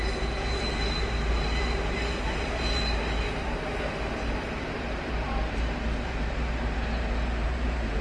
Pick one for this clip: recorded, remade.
remade